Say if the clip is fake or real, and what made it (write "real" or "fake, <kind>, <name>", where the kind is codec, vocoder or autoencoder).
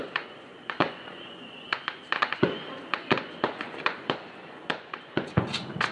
fake, vocoder, Vocos